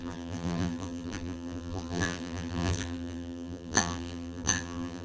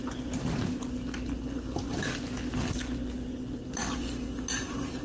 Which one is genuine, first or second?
second